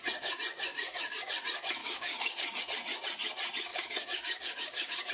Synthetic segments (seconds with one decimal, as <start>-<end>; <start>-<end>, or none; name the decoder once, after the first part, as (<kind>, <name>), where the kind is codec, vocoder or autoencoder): 0.7-1.2 (codec, DAC); 1.8-2.6; 3.7-5.1